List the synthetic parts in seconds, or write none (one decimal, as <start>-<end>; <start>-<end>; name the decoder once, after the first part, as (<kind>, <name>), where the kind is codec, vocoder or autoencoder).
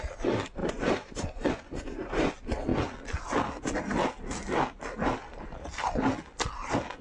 0.6-2.3 (vocoder, Vocos)